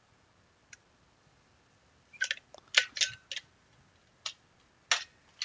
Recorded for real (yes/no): yes